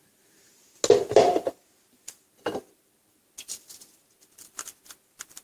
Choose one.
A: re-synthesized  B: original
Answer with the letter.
B